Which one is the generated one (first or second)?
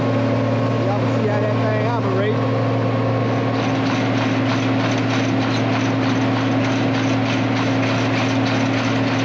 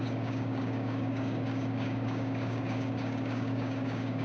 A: second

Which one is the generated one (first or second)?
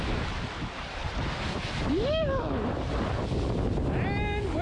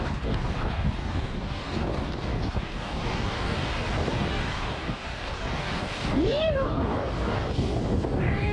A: second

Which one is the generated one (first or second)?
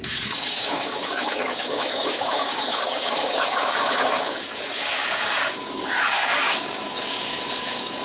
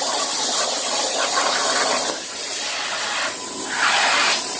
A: first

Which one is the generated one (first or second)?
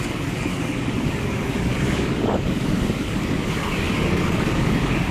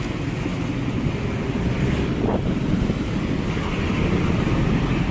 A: first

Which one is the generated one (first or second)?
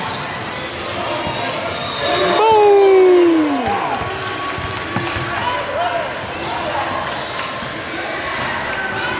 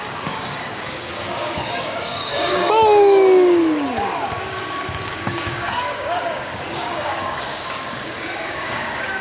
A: second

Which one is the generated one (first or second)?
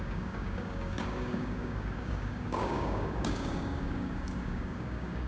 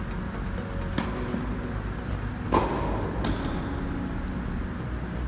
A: first